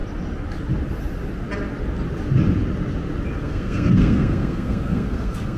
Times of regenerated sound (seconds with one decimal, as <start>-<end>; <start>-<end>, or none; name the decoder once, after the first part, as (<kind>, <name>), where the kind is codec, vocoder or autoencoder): 3.4-5.6 (codec, SNAC)

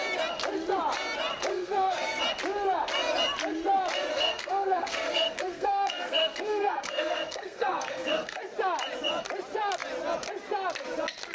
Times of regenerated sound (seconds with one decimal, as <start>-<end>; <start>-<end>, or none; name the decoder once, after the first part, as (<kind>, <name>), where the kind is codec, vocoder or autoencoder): 1.5-2.2 (codec, SNAC); 4.1-8.4

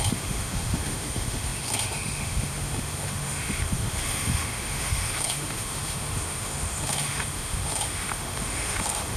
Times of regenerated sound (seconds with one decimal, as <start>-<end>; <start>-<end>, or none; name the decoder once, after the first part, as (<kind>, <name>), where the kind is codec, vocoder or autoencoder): 0.0-9.2 (autoencoder, DAC-VAE)

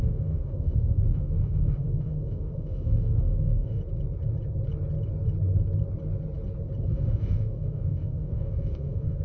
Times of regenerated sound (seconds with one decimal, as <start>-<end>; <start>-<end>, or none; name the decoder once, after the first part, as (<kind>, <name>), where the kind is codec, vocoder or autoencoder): 0.0-3.8 (autoencoder, DAC-VAE); 6.8-9.2

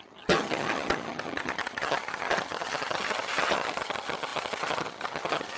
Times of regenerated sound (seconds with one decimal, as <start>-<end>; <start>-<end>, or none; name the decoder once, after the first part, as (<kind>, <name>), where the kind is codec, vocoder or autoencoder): 0.0-5.6 (vocoder, HiFi-GAN)

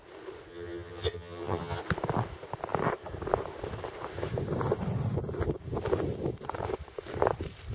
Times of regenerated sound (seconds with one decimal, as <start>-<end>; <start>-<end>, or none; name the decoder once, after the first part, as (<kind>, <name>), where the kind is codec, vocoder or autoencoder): 0.5-1.8 (vocoder, HiFi-GAN)

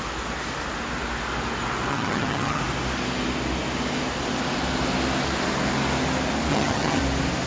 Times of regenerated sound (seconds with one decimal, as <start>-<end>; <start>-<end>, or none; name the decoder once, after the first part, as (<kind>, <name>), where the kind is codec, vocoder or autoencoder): 1.9-2.6 (vocoder, HiFi-GAN); 6.5-7.0